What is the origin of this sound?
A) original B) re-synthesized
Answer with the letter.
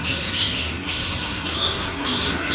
B